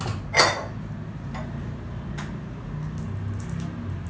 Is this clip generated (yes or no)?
no